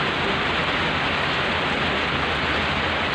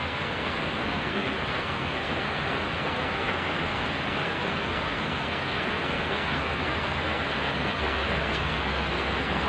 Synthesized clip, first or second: second